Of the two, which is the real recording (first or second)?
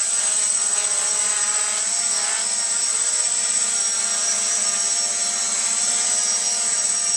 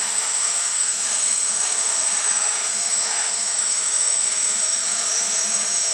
first